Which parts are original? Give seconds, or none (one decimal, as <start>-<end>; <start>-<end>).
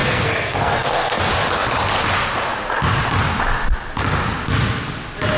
1.2-5.4